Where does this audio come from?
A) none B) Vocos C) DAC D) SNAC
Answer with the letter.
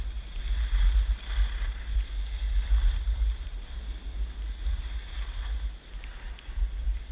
A